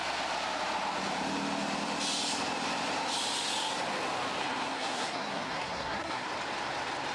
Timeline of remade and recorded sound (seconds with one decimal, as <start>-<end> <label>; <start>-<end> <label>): 0.0-4.4 recorded; 4.4-6.3 remade; 6.3-7.1 recorded